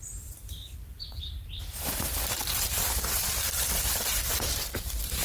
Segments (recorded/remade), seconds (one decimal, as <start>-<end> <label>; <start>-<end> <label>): 0.0-5.2 remade